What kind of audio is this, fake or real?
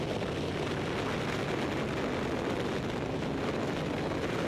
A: real